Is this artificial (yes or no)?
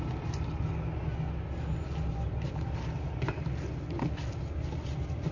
no